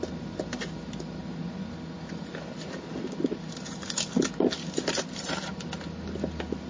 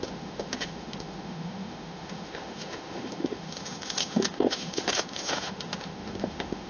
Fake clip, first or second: second